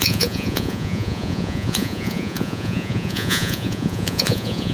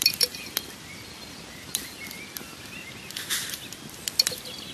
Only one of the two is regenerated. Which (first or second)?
first